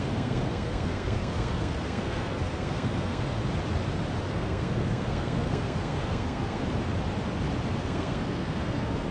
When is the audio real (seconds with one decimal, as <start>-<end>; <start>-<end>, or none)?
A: 3.4-4.3; 6.6-7.8